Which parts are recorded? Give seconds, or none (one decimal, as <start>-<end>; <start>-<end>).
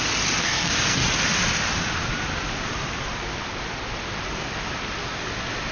0.0-0.4; 1.0-5.7